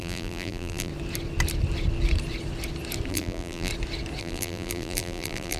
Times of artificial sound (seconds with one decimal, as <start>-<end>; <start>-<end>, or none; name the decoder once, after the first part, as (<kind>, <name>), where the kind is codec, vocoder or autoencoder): 0.0-0.9 (vocoder, BigVGAN v2); 3.1-3.7; 4.2-5.6